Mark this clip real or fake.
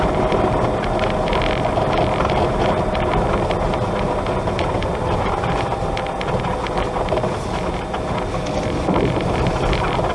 real